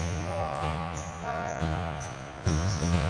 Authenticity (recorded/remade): remade